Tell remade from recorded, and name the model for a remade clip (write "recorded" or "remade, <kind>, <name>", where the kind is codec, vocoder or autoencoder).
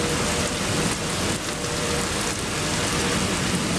recorded